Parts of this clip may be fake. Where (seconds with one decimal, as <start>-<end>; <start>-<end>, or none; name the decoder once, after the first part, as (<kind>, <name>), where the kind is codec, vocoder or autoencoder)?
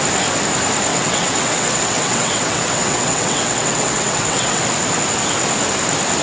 0.9-4.6 (vocoder, WaveNeXt)